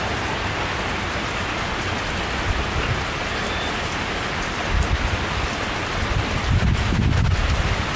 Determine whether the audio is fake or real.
real